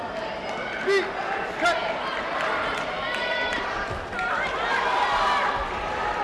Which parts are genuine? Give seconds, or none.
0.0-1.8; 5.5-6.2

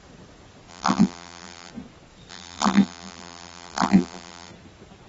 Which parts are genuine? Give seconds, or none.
0.0-0.7; 1.7-2.3; 4.5-5.1